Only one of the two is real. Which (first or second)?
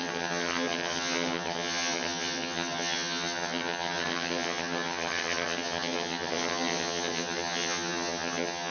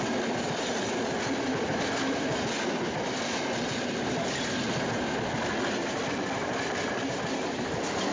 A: second